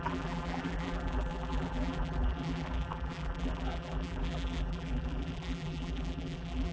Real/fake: fake